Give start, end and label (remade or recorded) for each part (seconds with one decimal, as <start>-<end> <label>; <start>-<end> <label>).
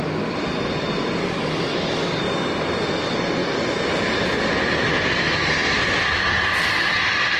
0.0-1.2 recorded; 1.2-2.2 remade; 2.2-7.4 recorded